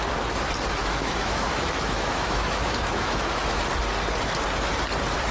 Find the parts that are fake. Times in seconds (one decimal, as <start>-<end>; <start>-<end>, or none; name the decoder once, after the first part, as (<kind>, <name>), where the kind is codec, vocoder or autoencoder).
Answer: 0.8-3.6 (autoencoder, DAC-VAE)